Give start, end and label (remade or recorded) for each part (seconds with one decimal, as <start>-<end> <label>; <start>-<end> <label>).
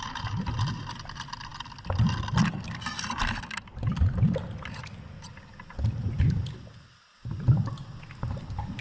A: 0.0-8.8 recorded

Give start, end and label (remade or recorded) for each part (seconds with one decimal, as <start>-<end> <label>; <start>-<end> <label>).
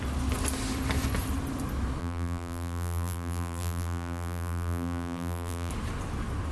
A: 0.0-2.0 recorded; 2.0-5.7 remade; 5.7-6.5 recorded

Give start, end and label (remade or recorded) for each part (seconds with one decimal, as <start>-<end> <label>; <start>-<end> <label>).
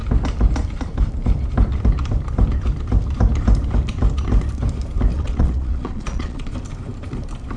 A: 0.0-5.1 recorded; 5.1-6.5 remade; 6.5-7.6 recorded